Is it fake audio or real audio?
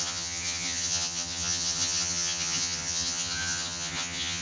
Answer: fake